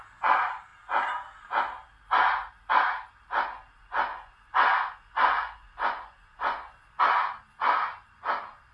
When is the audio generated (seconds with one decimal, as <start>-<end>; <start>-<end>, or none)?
4.1-7.0